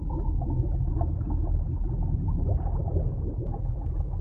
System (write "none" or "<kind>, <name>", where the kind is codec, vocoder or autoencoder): none